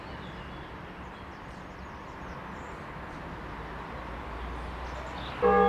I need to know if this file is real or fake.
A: real